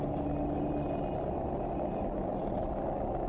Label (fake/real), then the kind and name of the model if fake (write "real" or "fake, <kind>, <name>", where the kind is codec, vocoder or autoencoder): real